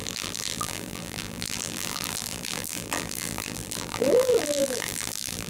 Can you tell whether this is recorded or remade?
remade